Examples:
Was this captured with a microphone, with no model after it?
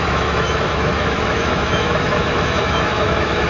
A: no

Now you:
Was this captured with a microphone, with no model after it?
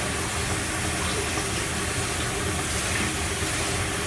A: yes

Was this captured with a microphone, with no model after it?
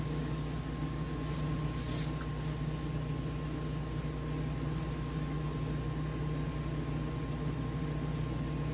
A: yes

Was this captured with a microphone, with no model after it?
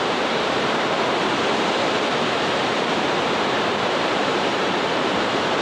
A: no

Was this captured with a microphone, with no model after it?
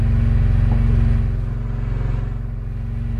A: yes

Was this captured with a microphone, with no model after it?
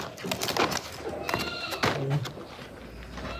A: yes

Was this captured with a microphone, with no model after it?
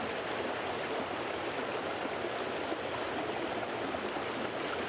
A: yes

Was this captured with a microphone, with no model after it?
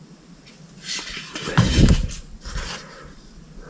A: yes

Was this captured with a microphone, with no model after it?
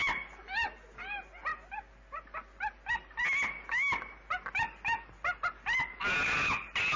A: yes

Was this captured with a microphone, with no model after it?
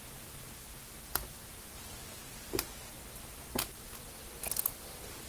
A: yes